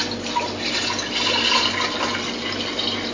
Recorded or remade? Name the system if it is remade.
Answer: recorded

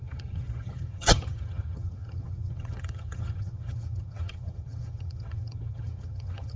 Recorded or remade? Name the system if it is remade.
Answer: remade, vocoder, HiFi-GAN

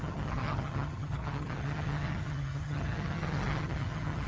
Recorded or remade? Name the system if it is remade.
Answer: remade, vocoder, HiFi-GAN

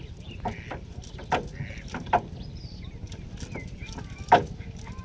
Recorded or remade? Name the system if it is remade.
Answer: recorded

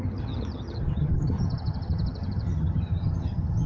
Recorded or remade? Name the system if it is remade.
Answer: remade, vocoder, HiFi-GAN